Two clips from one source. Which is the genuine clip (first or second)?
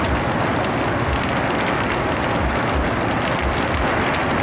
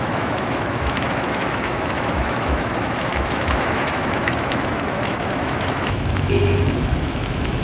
first